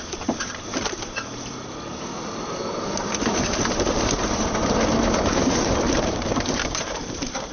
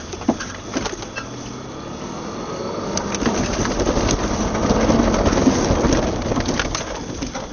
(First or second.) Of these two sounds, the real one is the second